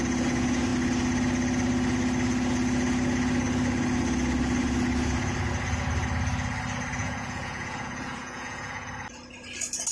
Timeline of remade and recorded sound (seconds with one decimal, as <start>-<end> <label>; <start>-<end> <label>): 0.0-7.0 recorded; 7.0-8.9 remade; 8.9-9.9 recorded